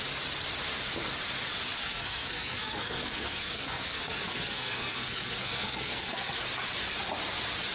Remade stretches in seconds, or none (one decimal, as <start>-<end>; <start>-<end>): 1.8-6.4